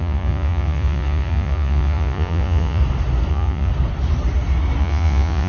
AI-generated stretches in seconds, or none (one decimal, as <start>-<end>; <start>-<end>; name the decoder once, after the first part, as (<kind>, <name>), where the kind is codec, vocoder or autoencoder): 0.0-2.8 (vocoder, Vocos); 3.3-3.7; 4.8-5.5